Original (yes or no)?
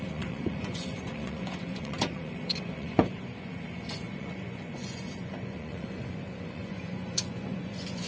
no